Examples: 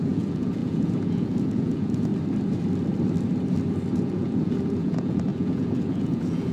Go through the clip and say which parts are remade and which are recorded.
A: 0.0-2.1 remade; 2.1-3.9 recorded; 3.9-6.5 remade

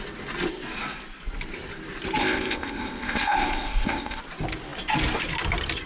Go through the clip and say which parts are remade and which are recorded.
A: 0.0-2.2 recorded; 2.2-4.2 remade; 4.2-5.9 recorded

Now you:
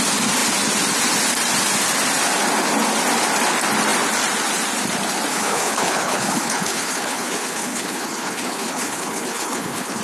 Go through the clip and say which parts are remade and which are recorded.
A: 0.0-5.3 recorded; 5.3-10.0 remade

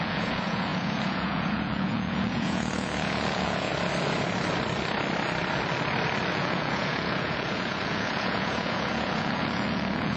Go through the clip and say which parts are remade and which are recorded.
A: 0.0-3.7 remade; 3.7-6.3 recorded; 6.3-10.2 remade